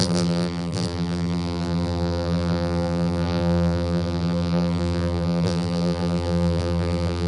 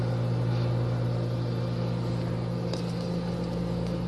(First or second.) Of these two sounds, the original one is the second